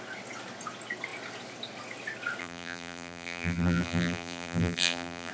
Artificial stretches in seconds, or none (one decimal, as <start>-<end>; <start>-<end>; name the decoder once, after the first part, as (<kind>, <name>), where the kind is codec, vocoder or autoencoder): 2.4-5.3 (vocoder, BigVGAN v2)